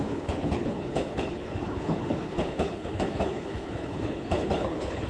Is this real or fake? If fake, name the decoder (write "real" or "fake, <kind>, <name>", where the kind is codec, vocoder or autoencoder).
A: fake, codec, HILCodec